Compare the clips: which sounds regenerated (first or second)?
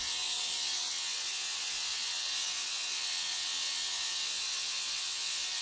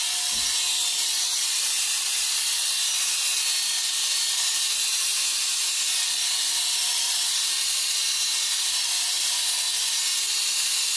first